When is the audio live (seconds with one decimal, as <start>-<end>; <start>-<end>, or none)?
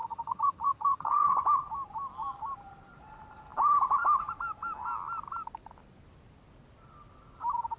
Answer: 1.4-7.8